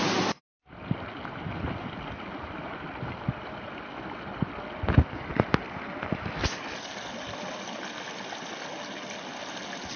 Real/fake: real